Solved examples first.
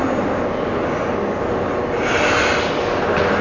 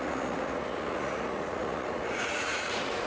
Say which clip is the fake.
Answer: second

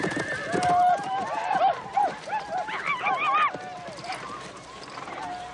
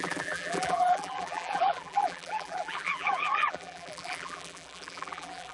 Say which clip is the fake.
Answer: second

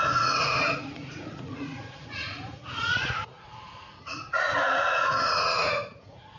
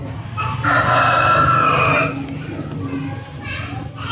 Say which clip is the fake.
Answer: first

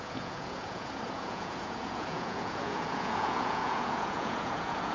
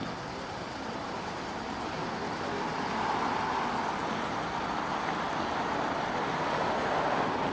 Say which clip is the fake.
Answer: first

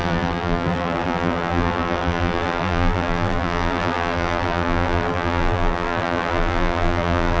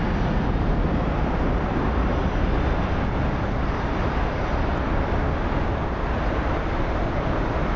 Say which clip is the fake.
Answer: first